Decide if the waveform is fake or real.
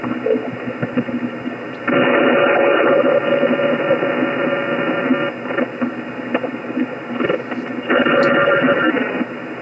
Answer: real